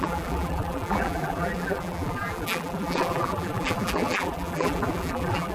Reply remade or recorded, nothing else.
remade